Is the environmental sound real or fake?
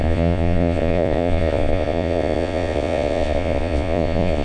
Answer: fake